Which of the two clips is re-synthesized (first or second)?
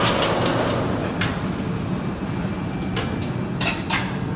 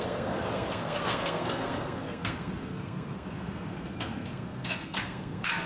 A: second